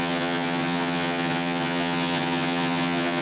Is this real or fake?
fake